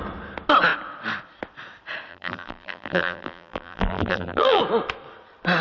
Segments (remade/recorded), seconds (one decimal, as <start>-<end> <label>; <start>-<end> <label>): 0.0-2.1 recorded; 2.1-4.6 remade; 4.6-5.6 recorded